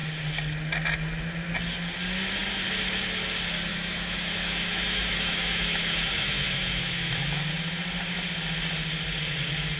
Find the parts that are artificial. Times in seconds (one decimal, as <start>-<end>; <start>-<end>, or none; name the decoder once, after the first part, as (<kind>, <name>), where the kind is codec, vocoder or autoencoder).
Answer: 3.7-7.5 (autoencoder, DAC-VAE)